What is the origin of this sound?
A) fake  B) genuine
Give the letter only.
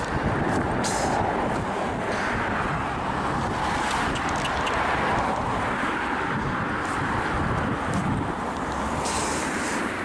B